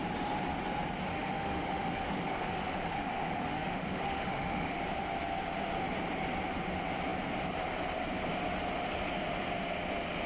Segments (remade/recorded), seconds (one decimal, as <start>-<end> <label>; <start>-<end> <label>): 0.0-1.1 recorded; 1.1-4.8 remade; 4.8-10.3 recorded